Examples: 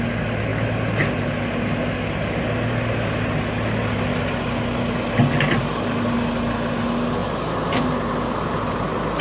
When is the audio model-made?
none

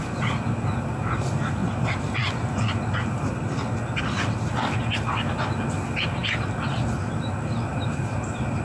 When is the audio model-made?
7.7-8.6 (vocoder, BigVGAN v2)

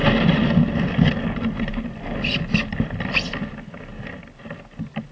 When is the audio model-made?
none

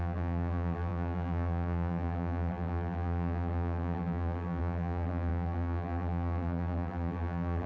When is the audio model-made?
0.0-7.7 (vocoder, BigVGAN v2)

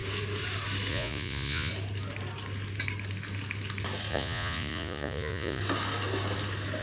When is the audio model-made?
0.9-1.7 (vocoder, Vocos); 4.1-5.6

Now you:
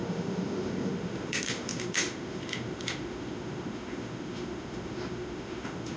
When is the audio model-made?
0.0-6.0 (autoencoder, DAC-VAE)